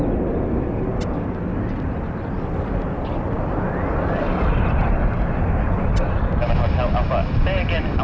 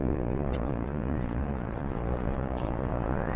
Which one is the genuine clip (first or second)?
first